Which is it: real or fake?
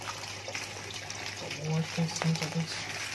real